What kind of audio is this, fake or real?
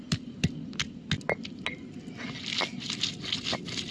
real